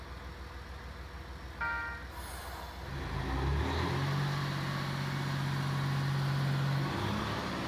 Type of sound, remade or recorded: recorded